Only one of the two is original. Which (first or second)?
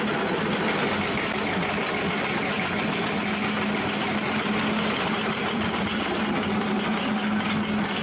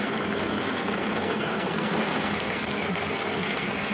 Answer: first